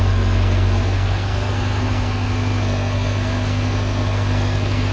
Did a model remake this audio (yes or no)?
yes